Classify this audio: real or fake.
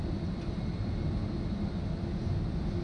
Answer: real